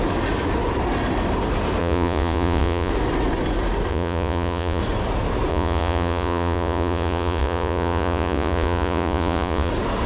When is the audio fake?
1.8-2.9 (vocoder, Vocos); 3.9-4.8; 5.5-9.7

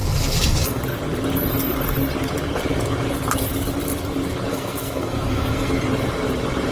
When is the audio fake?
0.0-0.8 (codec, SNAC); 4.5-5.7

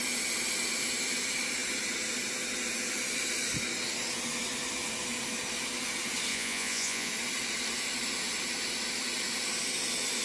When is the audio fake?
6.3-7.1 (vocoder, Vocos)

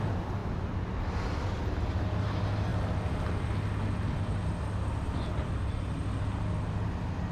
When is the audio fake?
none

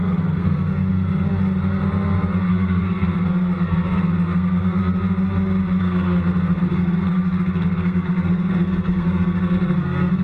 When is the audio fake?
0.0-0.9 (codec, SNAC); 2.5-4.8; 5.8-10.2

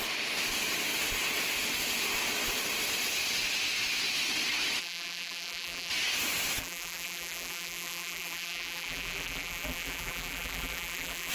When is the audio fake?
4.8-5.9 (vocoder, BigVGAN v2); 6.6-11.3